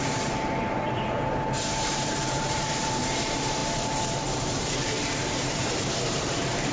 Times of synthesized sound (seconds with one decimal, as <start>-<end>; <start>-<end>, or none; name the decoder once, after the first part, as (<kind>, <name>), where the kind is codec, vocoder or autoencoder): 0.0-6.7 (vocoder, BigVGAN v2)